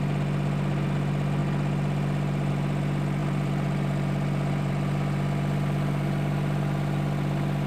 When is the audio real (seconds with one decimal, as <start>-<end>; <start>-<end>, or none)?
0.0-3.2; 4.7-7.7

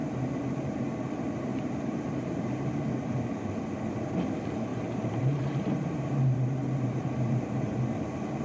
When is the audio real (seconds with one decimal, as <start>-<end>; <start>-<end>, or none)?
1.1-1.5; 2.5-4.7; 6.1-8.4

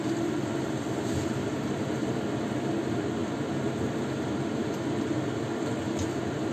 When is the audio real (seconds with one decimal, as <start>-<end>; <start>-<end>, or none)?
0.0-1.4; 2.1-6.5

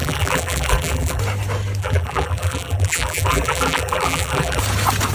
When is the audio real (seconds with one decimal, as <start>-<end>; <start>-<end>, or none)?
1.2-1.8; 4.6-5.1

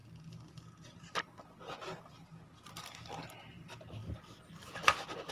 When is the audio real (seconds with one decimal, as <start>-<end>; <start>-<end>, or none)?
0.0-2.3; 3.4-4.0

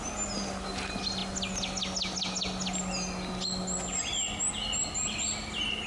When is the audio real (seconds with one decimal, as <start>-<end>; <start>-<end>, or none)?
0.0-5.9

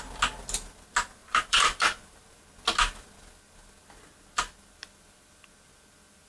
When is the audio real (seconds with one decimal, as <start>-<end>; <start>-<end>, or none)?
0.0-1.2; 2.4-6.3

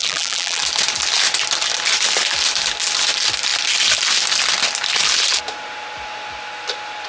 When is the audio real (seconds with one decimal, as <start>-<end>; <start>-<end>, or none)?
0.6-7.1